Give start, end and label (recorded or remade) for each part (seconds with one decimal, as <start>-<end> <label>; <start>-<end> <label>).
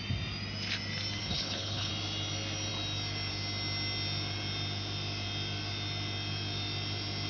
0.0-1.2 recorded; 1.2-1.9 remade; 1.9-7.3 recorded